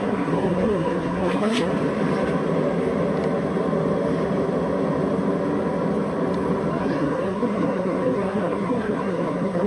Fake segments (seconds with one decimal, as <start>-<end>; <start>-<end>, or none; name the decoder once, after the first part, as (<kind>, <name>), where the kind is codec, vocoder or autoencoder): 0.0-1.7 (codec, SNAC); 6.7-9.7

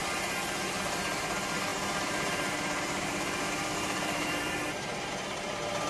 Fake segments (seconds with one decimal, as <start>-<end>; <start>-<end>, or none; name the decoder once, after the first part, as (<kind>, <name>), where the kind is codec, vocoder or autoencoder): 1.7-5.1 (vocoder, BigVGAN v2)

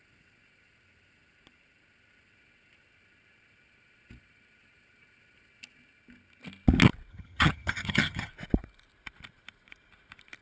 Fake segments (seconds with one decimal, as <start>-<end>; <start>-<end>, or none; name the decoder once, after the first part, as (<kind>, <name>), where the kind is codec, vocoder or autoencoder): 7.1-8.3 (vocoder, HiFi-GAN)

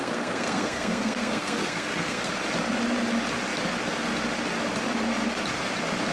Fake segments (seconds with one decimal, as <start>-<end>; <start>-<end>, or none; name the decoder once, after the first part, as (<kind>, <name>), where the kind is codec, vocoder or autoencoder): 0.0-2.3 (codec, SNAC)